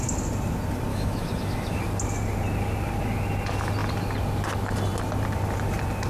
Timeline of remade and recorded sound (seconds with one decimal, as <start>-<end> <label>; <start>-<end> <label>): 0.0-0.9 recorded; 0.9-1.8 remade; 1.8-6.1 recorded